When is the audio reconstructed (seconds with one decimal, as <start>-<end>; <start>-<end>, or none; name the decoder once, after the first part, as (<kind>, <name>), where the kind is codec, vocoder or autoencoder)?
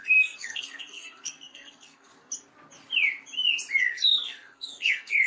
0.0-2.1 (codec, SNAC); 3.8-5.3